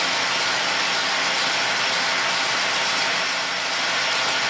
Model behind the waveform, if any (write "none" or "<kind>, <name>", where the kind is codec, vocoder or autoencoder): none